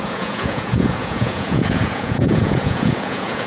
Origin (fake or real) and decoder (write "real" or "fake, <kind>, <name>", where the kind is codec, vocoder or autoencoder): fake, vocoder, Vocos